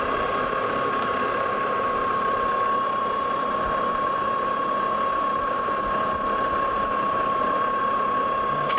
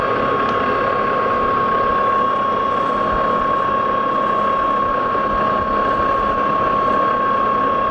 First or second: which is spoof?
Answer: first